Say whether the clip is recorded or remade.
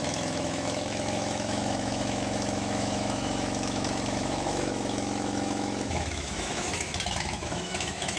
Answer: remade